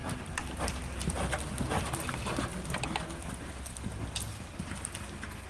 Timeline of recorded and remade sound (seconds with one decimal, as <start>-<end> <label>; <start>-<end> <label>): 0.0-5.5 recorded